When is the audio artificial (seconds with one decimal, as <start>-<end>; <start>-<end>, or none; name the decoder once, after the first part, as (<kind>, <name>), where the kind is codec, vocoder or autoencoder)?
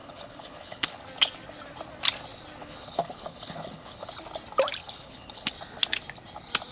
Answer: 0.0-1.0 (codec, HILCodec); 2.6-4.1; 4.8-5.5